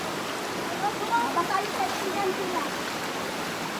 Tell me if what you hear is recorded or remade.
recorded